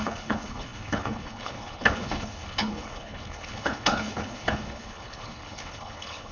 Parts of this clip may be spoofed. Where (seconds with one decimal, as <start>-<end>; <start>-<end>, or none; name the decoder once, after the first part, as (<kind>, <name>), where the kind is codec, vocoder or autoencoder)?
0.0-6.3 (codec, HILCodec)

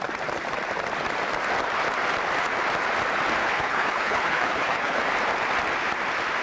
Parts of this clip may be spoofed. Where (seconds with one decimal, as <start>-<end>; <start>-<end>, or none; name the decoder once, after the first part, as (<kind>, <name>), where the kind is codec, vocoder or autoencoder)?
3.4-5.0 (codec, HILCodec)

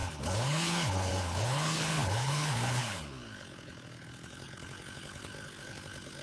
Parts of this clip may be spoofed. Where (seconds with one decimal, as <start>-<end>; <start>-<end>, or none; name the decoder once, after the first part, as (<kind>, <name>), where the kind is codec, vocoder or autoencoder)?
0.0-6.2 (codec, HILCodec)

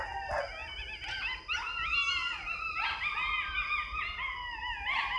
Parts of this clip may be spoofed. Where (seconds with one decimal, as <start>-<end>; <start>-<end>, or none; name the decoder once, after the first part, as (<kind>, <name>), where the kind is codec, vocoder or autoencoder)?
none

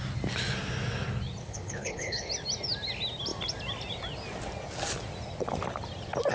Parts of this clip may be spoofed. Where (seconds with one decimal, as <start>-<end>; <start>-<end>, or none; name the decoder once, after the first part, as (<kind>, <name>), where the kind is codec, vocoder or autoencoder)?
1.4-2.3 (codec, HILCodec)

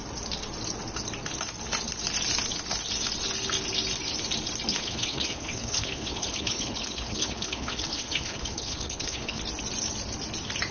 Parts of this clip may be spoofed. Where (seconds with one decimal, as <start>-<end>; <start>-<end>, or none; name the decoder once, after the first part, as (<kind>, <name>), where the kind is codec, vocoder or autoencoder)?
4.7-9.4 (codec, HILCodec)